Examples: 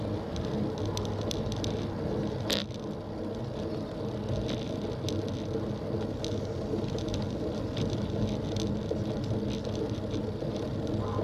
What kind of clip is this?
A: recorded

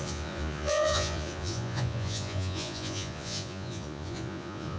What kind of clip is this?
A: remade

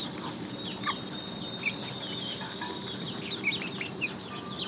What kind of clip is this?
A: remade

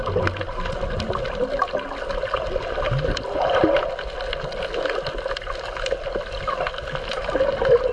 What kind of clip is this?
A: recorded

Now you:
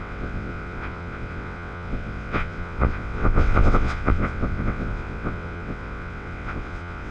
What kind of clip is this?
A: remade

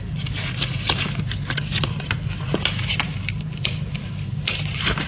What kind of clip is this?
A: recorded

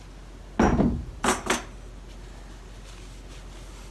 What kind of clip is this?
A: recorded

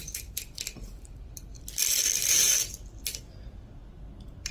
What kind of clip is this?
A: remade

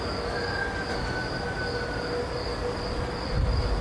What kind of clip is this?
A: recorded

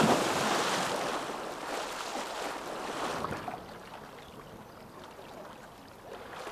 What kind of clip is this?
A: recorded